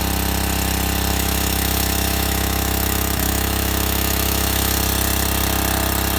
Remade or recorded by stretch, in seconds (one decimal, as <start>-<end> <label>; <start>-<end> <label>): 0.0-1.1 recorded; 1.1-4.8 remade; 4.8-6.2 recorded